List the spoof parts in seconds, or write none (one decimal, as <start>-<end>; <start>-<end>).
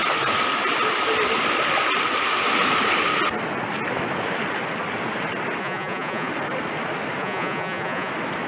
5.6-6.3; 7.2-8.1